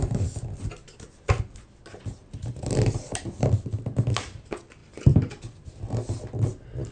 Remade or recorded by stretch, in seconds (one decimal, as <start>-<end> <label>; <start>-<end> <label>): 0.0-2.2 recorded; 2.2-3.4 remade; 3.4-6.9 recorded